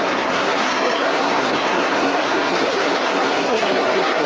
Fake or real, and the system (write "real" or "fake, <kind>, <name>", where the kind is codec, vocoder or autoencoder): fake, codec, SNAC